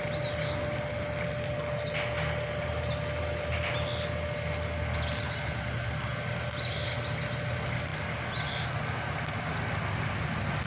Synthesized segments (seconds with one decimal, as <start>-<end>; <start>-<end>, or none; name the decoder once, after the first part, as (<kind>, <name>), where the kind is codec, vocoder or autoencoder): none